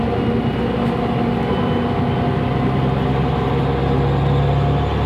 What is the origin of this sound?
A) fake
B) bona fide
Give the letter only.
B